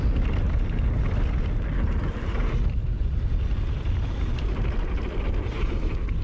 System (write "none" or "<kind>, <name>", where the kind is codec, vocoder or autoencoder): none